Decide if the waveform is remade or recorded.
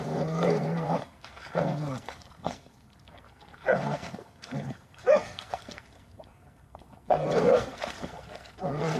remade